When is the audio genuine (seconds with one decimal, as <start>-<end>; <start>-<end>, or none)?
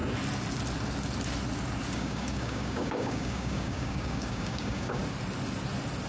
0.0-1.9; 5.0-6.1